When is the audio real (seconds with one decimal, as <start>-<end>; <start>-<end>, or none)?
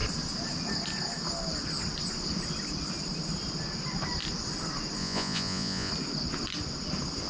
0.0-5.0; 5.9-7.3